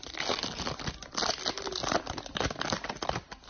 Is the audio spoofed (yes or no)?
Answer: no